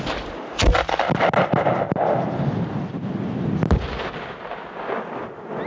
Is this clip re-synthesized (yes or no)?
no